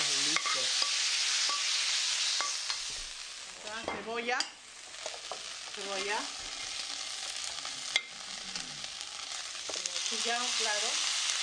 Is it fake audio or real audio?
real